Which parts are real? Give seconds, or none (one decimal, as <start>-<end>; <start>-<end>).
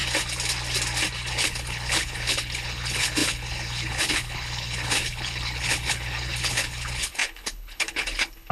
0.0-1.3